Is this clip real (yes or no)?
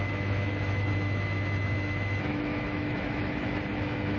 no